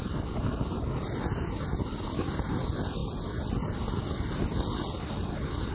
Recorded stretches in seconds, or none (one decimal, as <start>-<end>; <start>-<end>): 0.0-5.7